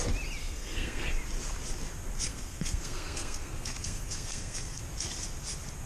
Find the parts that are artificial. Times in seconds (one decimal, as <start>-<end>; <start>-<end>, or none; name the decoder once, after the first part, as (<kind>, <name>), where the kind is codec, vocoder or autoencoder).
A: 0.4-1.1 (codec, SNAC); 2.3-4.8